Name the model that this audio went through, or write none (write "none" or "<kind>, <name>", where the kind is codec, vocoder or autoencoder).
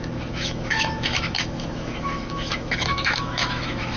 autoencoder, DAC-VAE